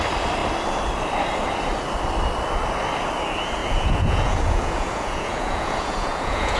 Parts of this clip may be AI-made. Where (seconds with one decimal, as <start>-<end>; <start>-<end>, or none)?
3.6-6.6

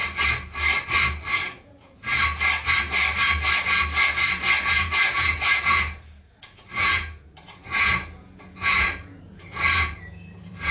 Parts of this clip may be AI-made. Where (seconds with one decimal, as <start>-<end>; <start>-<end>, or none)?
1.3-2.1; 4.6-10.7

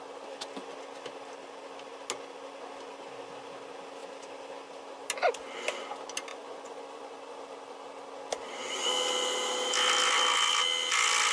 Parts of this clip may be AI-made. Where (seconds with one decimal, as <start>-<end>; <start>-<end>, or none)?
6.3-7.1